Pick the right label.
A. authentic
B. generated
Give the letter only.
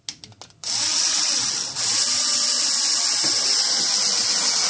A